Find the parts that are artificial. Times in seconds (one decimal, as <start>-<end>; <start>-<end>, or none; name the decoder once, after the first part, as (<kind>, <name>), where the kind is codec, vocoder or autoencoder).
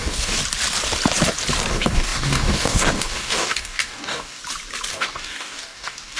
0.0-0.4 (codec, DAC); 1.7-4.4; 4.9-6.2